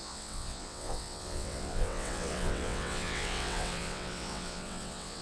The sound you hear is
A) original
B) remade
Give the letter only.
B